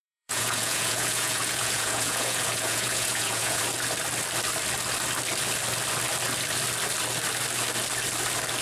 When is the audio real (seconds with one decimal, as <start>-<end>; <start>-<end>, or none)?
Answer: 3.6-8.6